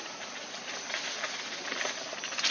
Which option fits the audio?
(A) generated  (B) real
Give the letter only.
B